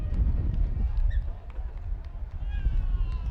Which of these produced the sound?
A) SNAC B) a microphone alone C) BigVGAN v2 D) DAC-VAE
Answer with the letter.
B